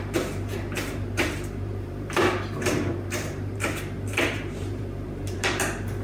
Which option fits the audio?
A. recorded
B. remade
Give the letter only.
B